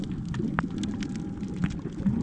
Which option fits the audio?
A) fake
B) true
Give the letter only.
B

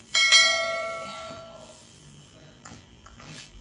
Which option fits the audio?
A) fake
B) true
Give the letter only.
A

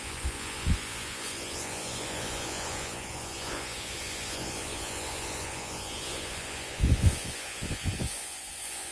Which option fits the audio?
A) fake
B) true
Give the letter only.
A